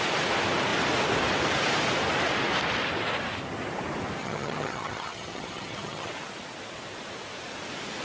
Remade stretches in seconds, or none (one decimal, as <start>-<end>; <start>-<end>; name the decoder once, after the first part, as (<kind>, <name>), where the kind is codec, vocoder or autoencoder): 4.2-6.1 (vocoder, HiFi-GAN)